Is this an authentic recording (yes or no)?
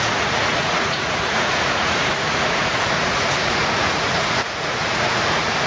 no